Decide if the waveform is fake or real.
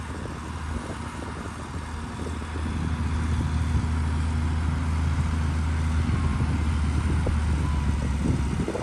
real